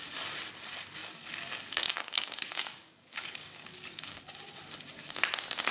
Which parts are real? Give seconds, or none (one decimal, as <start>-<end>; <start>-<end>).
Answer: 0.0-1.0; 4.2-5.7